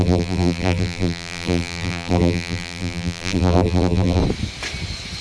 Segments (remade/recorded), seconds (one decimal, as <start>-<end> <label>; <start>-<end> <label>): 0.0-4.2 remade; 4.2-5.2 recorded